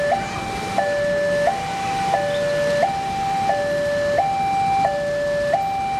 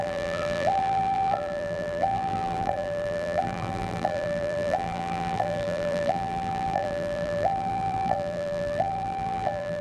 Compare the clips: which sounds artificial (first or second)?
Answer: second